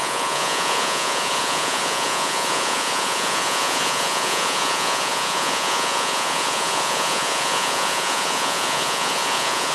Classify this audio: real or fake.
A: fake